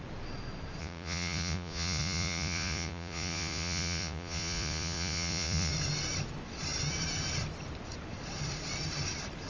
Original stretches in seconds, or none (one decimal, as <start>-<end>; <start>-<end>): 0.0-0.8; 5.7-9.5